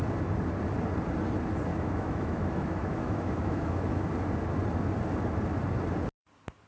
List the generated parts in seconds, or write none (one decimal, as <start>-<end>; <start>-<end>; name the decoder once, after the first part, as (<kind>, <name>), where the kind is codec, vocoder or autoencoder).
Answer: 1.7-4.1 (autoencoder, DAC-VAE)